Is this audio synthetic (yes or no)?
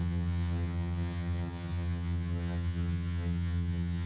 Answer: yes